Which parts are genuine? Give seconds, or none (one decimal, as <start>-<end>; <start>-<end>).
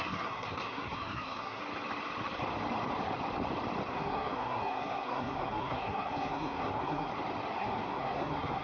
1.6-3.9; 7.1-7.6